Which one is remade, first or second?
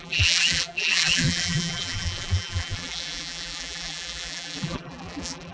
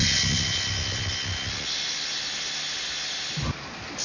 first